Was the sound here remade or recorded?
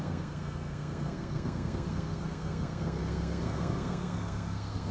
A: remade